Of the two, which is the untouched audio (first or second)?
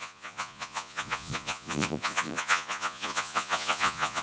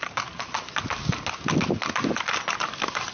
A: second